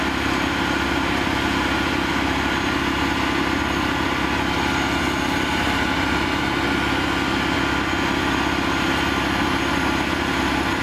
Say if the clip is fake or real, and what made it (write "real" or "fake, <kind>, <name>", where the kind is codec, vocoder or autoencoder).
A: real